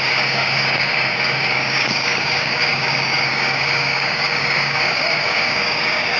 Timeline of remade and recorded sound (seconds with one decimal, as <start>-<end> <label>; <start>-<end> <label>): 0.0-6.2 remade